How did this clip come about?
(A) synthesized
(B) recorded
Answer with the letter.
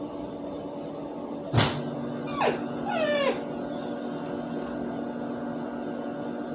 B